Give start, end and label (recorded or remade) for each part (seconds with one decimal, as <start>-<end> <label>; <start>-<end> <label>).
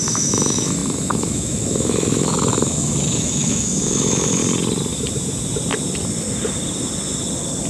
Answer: 0.0-4.4 remade; 4.4-7.7 recorded